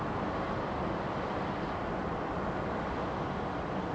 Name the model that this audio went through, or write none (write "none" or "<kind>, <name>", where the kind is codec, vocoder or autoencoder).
none